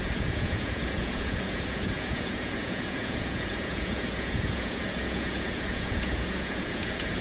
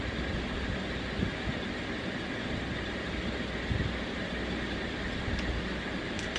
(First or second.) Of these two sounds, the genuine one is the second